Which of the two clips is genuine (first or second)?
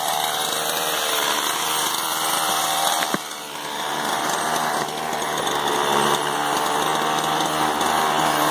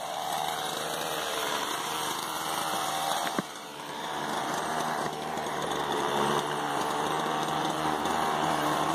first